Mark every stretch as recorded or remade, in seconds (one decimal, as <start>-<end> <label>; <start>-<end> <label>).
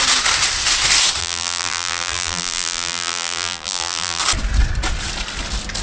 0.0-1.2 recorded; 1.2-4.2 remade; 4.2-5.8 recorded